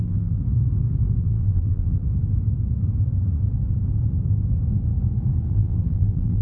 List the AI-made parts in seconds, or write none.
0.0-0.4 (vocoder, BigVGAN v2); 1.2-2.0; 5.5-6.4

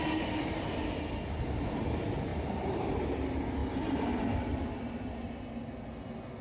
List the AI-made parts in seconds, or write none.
2.3-2.9 (vocoder, BigVGAN v2); 3.6-4.1

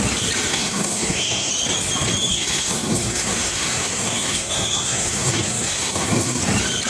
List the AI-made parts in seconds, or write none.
0.5-1.5 (codec, SNAC); 2.3-6.4

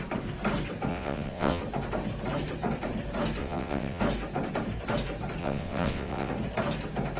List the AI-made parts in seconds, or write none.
0.9-1.6 (vocoder, WaveNeXt); 3.4-4.0; 5.4-6.3

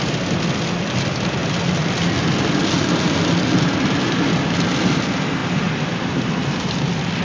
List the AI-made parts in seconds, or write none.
none

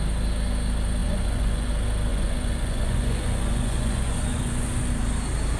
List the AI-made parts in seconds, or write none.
1.0-1.7 (vocoder, Vocos); 2.1-4.9